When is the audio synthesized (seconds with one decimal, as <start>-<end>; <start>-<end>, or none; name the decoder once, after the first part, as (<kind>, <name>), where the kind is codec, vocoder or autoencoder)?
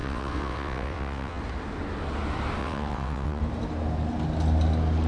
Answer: 0.0-1.4 (vocoder, WaveNeXt); 2.6-3.4